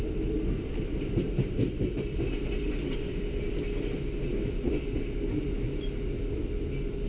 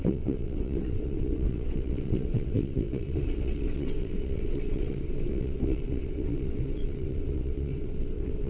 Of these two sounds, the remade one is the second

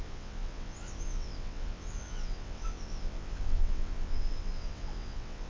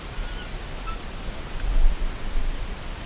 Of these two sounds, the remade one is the first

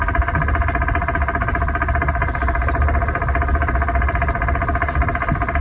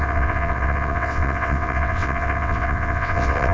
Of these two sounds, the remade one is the second